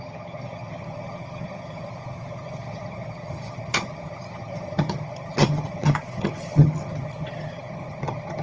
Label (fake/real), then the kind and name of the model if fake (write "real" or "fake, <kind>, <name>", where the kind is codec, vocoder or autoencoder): fake, vocoder, HiFi-GAN